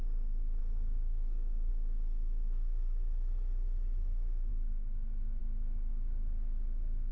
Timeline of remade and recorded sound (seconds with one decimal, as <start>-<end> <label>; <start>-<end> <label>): 0.0-0.6 recorded; 0.6-1.7 remade; 1.7-7.1 recorded